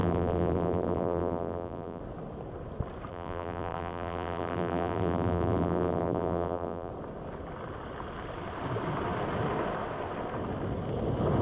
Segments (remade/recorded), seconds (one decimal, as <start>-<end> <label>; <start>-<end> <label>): 0.0-2.0 remade; 2.0-3.1 recorded; 3.1-6.9 remade; 6.9-11.4 recorded